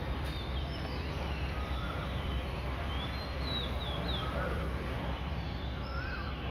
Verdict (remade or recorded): remade